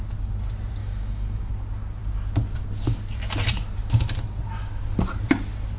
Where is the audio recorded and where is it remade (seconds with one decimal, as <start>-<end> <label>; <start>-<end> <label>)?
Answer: 0.0-0.8 recorded; 0.8-1.5 remade; 1.5-5.8 recorded